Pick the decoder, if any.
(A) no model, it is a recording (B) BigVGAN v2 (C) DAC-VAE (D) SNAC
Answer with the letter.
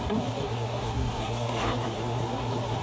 D